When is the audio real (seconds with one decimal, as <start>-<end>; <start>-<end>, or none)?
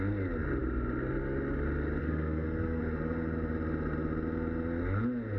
0.0-2.0; 2.8-5.4